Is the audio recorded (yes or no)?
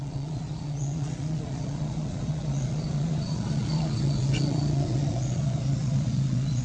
no